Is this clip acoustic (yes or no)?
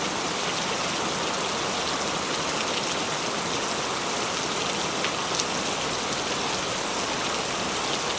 yes